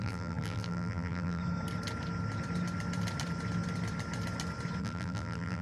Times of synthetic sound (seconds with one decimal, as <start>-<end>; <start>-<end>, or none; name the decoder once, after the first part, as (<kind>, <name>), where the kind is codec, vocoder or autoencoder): 0.0-1.4 (vocoder, BigVGAN v2); 4.8-5.6